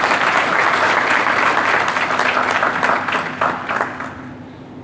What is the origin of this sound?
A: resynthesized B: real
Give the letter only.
B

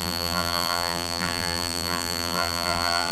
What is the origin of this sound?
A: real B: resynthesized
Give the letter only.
B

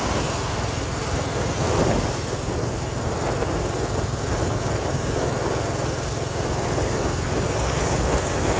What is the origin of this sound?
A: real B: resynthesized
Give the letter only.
A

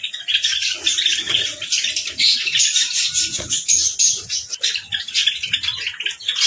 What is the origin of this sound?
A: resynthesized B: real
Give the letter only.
B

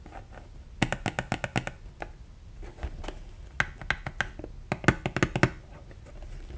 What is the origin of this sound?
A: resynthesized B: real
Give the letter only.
B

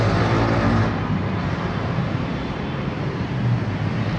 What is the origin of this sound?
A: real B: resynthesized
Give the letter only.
B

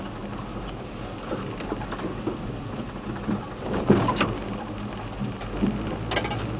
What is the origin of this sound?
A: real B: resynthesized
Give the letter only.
A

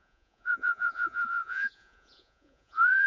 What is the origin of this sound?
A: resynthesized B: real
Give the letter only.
A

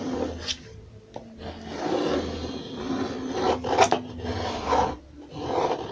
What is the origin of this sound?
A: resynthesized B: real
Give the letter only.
B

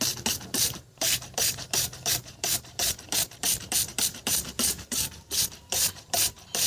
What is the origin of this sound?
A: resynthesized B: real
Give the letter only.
A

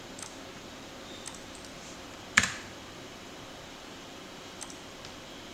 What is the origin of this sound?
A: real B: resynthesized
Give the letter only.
B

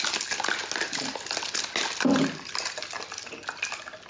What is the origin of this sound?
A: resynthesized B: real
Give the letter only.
B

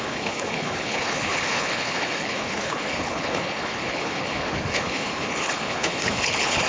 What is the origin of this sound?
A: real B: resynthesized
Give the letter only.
B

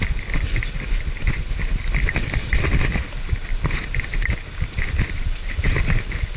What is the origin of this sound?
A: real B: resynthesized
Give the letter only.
A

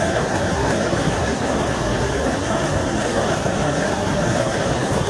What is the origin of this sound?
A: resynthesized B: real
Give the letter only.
A